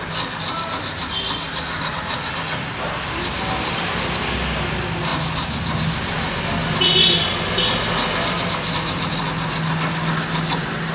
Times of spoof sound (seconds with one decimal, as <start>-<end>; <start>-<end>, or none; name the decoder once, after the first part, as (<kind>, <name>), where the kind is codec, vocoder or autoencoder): none